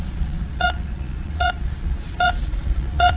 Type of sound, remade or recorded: remade